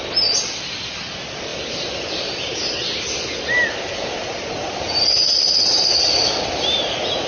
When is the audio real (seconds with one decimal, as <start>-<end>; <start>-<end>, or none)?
0.0-7.3